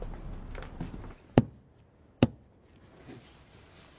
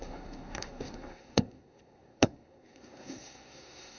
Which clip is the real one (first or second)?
first